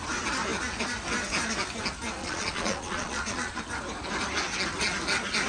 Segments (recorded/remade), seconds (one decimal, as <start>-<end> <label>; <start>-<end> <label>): 0.0-2.2 recorded; 2.2-3.6 remade; 3.6-5.5 recorded